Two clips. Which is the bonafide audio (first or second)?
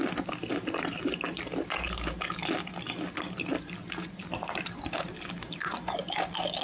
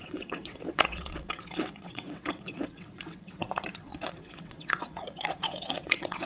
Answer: first